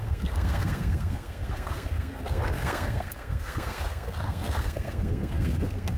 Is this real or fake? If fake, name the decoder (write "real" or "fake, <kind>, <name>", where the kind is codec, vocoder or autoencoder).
fake, codec, SNAC